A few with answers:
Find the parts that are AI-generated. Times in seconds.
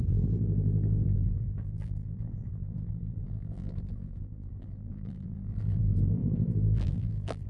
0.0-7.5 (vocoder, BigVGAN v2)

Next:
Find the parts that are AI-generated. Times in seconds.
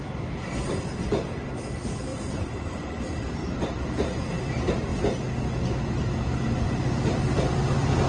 2.1-3.0 (vocoder, BigVGAN v2); 3.4-4.3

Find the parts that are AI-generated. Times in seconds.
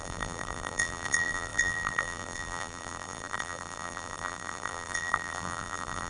0.0-6.1 (vocoder, BigVGAN v2)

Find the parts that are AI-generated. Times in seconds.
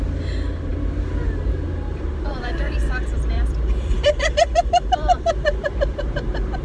2.3-6.6 (vocoder, BigVGAN v2)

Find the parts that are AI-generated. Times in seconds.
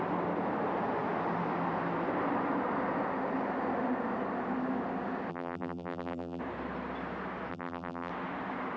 5.3-6.4 (vocoder, BigVGAN v2); 7.5-8.1